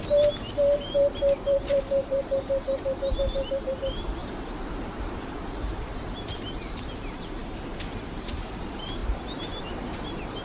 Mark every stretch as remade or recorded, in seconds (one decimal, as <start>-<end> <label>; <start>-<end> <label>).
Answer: 0.0-7.4 remade; 7.4-8.0 recorded; 8.0-10.4 remade